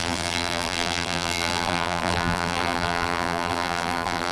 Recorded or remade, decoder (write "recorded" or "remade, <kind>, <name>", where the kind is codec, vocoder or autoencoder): remade, vocoder, BigVGAN v2